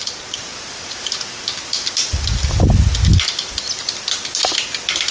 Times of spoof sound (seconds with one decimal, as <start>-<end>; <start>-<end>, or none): none